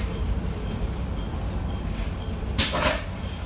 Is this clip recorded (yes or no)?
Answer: yes